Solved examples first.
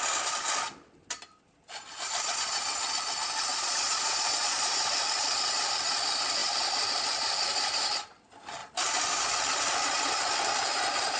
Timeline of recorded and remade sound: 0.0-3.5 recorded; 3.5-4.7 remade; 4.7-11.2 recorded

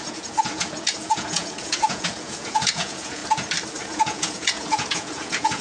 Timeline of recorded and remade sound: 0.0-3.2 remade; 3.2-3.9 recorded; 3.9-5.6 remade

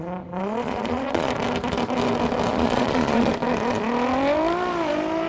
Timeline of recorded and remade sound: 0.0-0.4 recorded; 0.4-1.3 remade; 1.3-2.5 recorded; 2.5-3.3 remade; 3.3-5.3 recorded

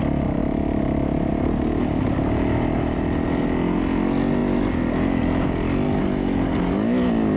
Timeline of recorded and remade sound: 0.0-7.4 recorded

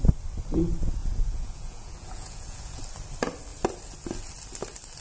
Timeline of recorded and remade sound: 0.0-1.0 recorded; 1.0-2.8 remade; 2.8-5.0 recorded

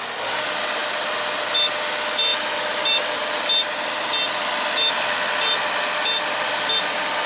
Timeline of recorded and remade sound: 0.0-7.3 recorded